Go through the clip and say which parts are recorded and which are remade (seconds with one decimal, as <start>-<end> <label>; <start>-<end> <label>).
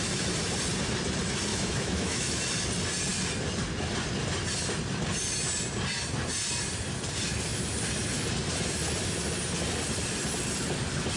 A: 0.0-1.5 recorded; 1.5-2.4 remade; 2.4-11.2 recorded